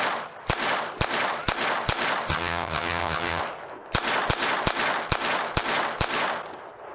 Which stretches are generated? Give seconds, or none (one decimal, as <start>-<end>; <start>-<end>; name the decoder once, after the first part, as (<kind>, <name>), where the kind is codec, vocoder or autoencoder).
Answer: 2.3-3.4 (vocoder, HiFi-GAN)